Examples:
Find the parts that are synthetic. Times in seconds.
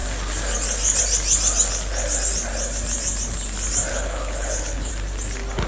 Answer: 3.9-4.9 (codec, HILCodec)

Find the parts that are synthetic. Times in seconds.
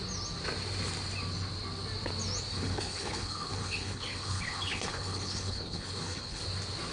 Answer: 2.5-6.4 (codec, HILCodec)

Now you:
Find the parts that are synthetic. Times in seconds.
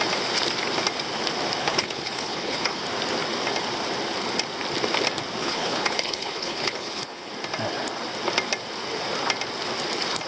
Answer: 1.6-2.8 (codec, HILCodec); 5.4-7.3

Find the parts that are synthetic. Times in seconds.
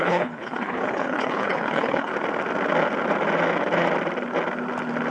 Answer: 0.0-2.1 (codec, HILCodec)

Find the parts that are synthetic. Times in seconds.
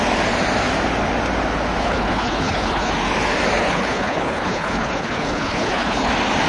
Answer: 1.8-2.9 (codec, HILCodec); 3.6-6.1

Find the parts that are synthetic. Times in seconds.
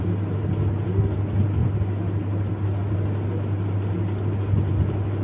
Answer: none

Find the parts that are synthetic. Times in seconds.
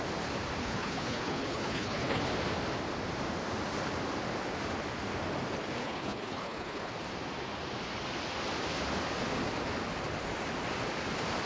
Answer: 0.6-2.2 (codec, HILCodec); 5.8-6.9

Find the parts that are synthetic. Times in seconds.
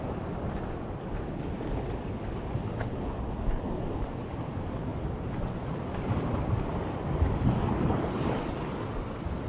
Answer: none